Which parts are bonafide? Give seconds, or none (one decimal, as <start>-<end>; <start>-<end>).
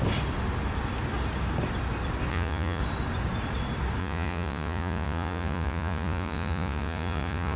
0.0-2.3; 2.8-4.0